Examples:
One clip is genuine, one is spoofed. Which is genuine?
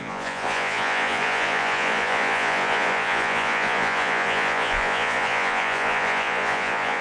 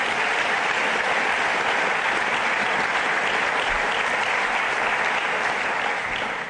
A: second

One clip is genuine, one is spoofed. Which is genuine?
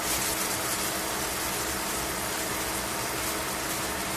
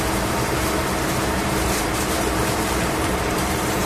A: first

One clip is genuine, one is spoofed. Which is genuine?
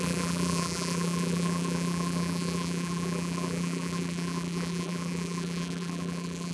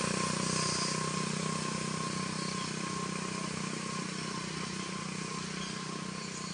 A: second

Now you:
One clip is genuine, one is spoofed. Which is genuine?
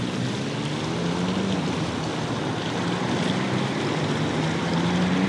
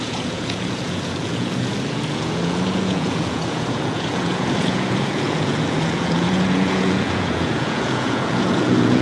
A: first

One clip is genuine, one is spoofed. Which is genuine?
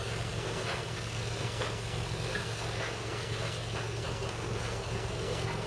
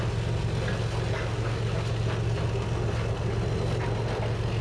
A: second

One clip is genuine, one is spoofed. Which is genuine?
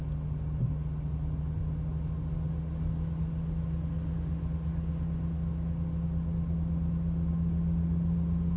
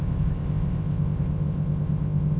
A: first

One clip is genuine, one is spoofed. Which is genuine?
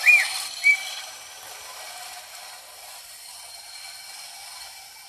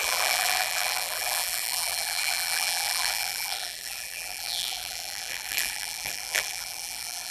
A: first